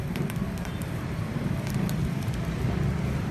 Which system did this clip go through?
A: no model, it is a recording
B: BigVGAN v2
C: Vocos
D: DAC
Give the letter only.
B